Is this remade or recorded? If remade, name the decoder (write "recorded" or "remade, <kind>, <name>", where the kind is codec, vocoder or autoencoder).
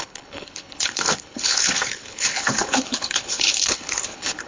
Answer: remade, codec, HILCodec